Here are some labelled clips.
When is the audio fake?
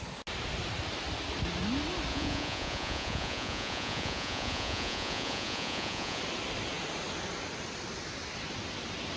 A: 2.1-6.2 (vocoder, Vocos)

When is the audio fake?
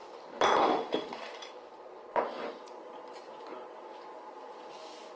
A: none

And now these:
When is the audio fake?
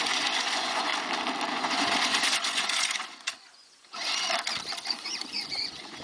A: 0.0-0.9 (vocoder, Vocos); 1.5-4.1; 4.9-6.0